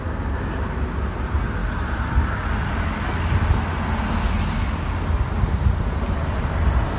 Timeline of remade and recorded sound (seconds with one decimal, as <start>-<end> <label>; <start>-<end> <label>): 0.0-7.0 recorded